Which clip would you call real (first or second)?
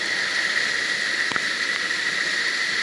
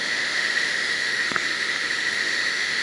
first